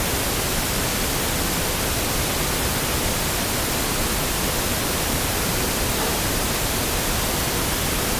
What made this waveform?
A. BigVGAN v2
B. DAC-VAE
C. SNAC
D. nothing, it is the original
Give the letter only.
D